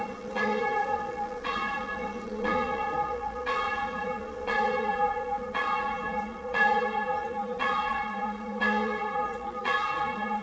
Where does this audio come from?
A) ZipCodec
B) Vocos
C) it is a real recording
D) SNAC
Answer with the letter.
B